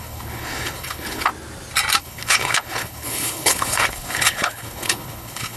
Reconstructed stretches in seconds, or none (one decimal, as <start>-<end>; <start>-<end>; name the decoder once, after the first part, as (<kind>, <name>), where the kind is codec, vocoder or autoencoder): 0.0-1.3 (codec, HILCodec); 2.0-5.6